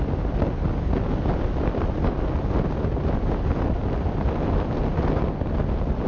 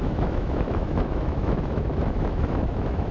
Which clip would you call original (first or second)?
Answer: first